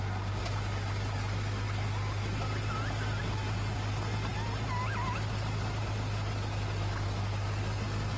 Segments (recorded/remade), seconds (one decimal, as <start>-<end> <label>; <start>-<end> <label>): 0.0-8.2 recorded